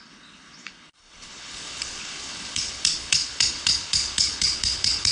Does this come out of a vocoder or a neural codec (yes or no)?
yes